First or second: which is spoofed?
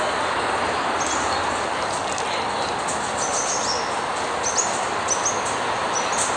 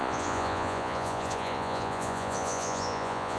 second